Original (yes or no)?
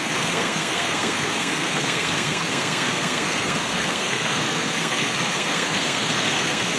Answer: no